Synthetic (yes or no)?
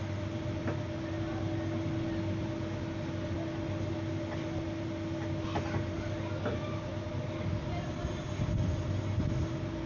no